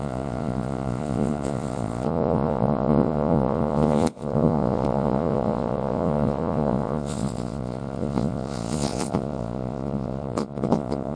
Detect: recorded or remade remade